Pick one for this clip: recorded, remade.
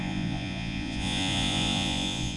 remade